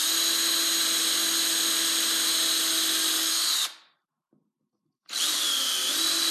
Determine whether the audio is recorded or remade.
recorded